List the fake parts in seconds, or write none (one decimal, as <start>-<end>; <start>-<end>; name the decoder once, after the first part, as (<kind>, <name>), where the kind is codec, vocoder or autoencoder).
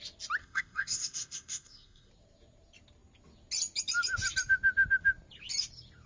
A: 0.4-2.1 (codec, ZipCodec)